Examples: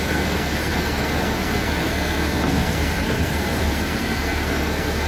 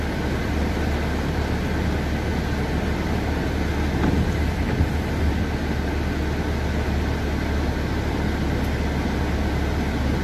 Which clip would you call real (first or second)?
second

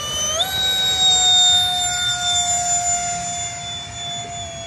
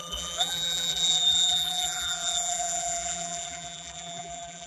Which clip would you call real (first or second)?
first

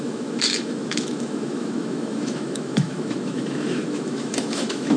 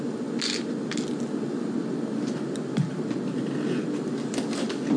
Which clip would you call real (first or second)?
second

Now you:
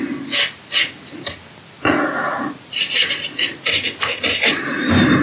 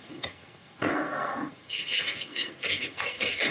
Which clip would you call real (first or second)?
first